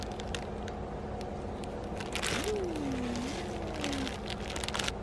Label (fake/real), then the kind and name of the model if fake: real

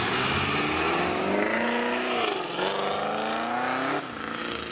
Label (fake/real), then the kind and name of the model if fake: real